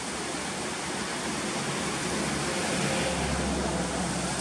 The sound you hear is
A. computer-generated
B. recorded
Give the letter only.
B